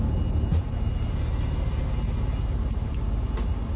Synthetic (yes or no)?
no